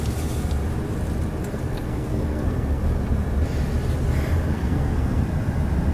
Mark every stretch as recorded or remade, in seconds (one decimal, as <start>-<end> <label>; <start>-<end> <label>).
0.0-1.4 recorded; 1.4-2.8 remade; 2.8-4.5 recorded; 4.5-5.2 remade; 5.2-5.9 recorded